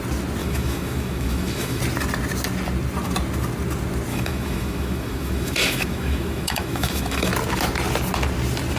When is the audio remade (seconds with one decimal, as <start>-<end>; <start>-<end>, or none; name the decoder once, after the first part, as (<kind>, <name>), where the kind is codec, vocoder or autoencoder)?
0.4-1.8 (autoencoder, DAC-VAE); 4.1-7.3